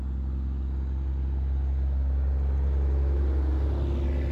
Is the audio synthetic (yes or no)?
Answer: no